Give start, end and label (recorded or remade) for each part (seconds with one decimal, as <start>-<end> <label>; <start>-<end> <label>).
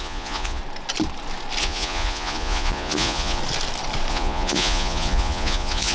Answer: 0.0-0.6 remade; 0.6-1.6 recorded; 1.6-3.4 remade; 3.4-4.1 recorded; 4.1-5.9 remade